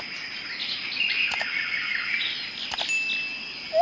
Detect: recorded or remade recorded